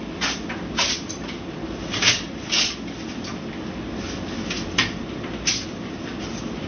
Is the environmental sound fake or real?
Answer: real